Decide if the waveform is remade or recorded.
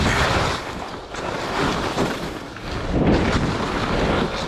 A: recorded